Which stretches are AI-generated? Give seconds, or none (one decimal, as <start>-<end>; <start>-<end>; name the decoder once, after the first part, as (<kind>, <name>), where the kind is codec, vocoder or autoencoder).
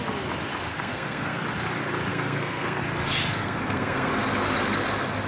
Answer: 0.7-1.4 (codec, SNAC); 2.1-2.8; 3.3-4.1